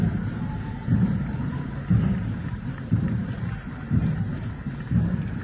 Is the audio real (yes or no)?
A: no